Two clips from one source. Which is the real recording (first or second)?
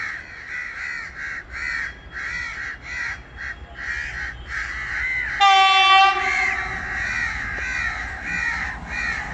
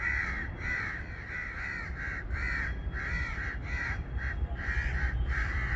first